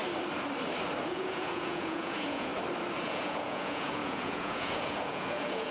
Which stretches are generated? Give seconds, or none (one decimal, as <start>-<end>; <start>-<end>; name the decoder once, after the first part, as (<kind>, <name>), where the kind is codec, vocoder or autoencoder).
1.0-2.5 (vocoder, Vocos); 3.0-5.7